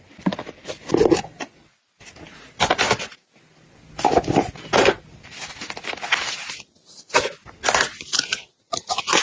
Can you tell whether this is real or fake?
real